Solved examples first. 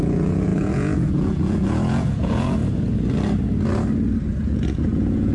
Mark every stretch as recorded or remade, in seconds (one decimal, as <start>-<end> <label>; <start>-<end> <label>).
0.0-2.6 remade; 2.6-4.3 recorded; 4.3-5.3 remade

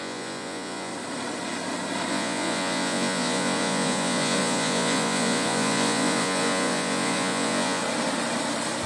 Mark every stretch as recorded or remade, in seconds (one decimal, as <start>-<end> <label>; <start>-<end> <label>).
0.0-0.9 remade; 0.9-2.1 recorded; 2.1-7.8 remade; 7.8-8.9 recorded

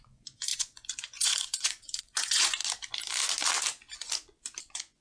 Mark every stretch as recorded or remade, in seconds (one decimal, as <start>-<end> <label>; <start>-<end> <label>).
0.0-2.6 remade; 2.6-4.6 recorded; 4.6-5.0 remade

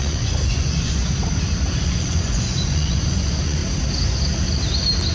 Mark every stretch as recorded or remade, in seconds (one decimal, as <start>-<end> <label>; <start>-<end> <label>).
0.0-1.0 remade; 1.0-1.8 recorded; 1.8-3.6 remade; 3.6-5.1 recorded

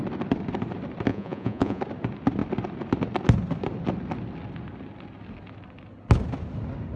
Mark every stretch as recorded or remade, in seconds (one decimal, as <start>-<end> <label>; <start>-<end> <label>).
0.0-1.1 recorded; 1.1-1.8 remade; 1.8-7.0 recorded

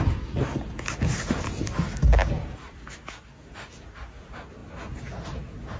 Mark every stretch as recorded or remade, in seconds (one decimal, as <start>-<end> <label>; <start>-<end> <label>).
0.0-5.8 recorded

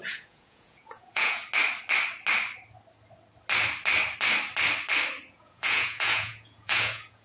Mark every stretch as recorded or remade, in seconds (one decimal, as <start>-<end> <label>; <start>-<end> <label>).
0.0-1.4 remade; 1.4-5.3 recorded; 5.3-7.2 remade

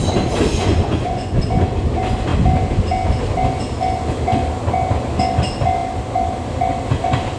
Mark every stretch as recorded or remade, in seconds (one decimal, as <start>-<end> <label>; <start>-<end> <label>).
0.0-0.5 recorded; 0.5-1.4 remade; 1.4-7.4 recorded